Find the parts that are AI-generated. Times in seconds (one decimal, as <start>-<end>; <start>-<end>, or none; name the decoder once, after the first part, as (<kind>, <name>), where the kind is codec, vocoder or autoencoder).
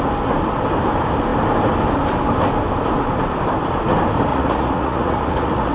4.3-5.7 (vocoder, Vocos)